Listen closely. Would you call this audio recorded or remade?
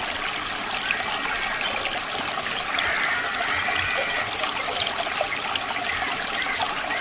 recorded